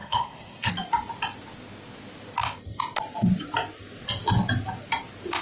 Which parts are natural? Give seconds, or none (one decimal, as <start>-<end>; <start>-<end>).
0.7-5.4